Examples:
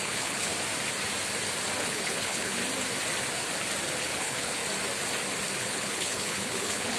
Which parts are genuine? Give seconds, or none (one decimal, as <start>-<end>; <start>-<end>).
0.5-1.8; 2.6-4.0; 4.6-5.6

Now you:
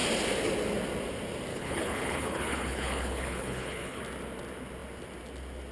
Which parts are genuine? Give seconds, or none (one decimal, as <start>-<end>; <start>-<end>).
0.0-1.5; 4.0-5.7

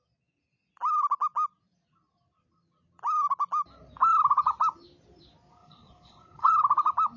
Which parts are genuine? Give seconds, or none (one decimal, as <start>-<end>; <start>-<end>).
0.0-5.6; 6.5-7.2